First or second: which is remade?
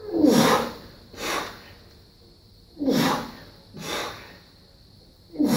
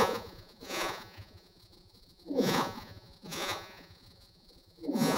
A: second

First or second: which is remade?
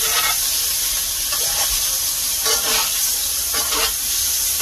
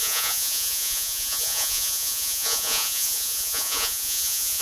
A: second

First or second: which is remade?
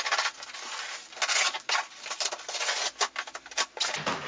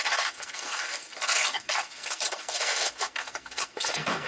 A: second